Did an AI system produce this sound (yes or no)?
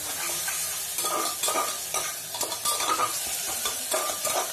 no